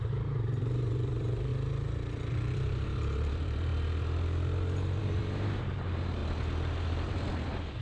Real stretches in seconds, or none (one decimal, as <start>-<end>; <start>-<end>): 1.5-2.3; 3.7-5.0; 6.2-6.7

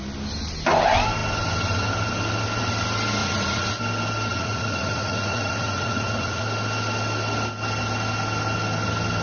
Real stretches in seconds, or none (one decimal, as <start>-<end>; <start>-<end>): 0.0-3.2; 3.8-4.3; 6.4-9.2